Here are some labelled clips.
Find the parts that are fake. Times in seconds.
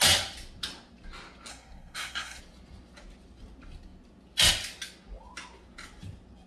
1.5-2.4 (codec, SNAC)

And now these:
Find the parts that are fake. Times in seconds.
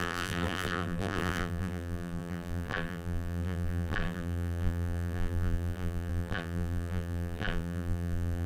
0.0-8.5 (vocoder, BigVGAN v2)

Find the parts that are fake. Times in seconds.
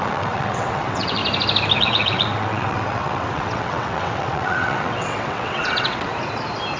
0.0-1.2 (vocoder, WaveNeXt); 1.8-6.1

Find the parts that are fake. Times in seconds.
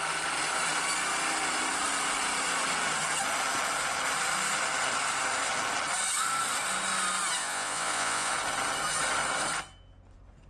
7.4-8.3 (vocoder, Vocos)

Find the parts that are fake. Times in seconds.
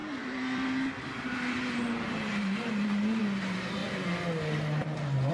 0.0-3.2 (vocoder, BigVGAN v2)